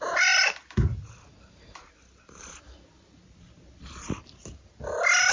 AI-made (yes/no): no